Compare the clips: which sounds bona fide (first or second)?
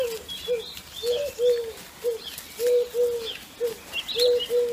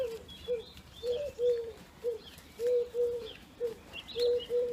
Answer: first